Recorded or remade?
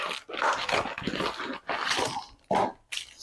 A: recorded